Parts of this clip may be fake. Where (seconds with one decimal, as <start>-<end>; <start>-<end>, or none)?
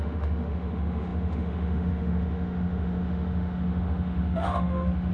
0.0-5.1